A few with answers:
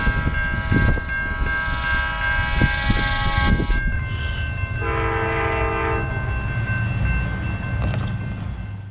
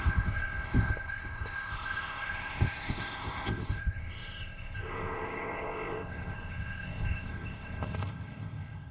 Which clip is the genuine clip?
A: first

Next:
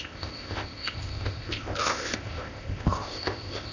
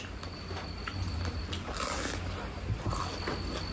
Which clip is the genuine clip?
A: second